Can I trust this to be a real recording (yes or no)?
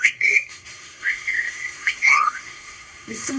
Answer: no